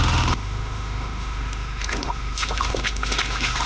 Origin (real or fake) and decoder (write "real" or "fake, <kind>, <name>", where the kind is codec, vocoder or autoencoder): fake, autoencoder, DAC-VAE